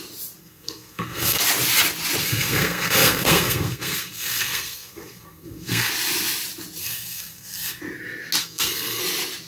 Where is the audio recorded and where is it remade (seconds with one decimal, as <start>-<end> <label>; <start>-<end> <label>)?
0.0-0.4 recorded; 0.4-1.4 remade; 1.4-2.2 recorded; 2.2-5.9 remade; 5.9-6.8 recorded; 6.8-7.8 remade; 7.8-8.4 recorded; 8.4-9.0 remade; 9.0-9.5 recorded